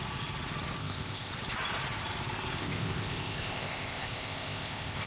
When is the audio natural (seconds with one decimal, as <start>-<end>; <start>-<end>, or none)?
0.0-0.8; 1.3-2.6